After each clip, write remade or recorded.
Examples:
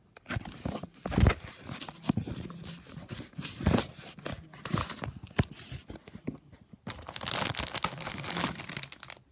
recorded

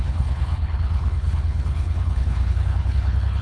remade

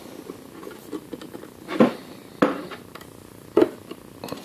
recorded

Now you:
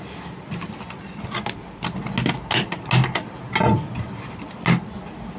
recorded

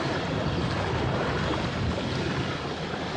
recorded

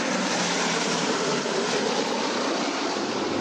remade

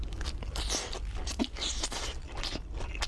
recorded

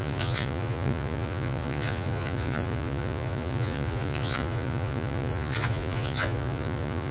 remade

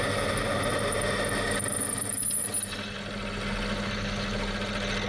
recorded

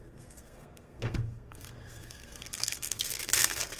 remade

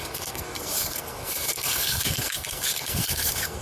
remade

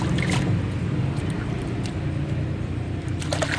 recorded